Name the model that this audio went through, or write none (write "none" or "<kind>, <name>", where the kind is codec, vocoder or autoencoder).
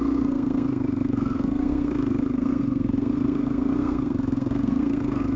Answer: codec, SNAC